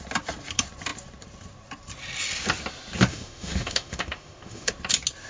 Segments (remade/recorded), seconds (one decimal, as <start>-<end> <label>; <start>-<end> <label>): 0.0-3.1 recorded; 3.1-4.7 remade; 4.7-5.3 recorded